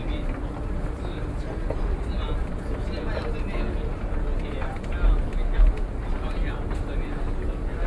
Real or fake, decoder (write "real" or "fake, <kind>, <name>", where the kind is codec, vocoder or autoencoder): real